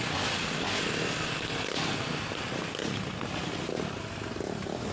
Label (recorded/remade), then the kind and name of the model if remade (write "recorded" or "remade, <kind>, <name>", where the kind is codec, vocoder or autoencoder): recorded